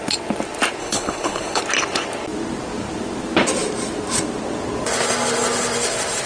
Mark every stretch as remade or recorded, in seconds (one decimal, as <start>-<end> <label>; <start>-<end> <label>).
0.0-0.8 recorded; 0.8-1.6 remade; 1.6-6.3 recorded